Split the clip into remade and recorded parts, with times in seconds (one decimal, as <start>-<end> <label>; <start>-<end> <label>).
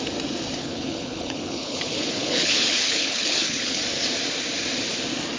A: 0.0-0.6 recorded; 0.6-3.8 remade; 3.8-5.4 recorded